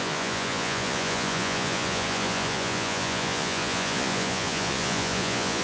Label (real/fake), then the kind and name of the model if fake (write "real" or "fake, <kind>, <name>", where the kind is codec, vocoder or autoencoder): fake, vocoder, Vocos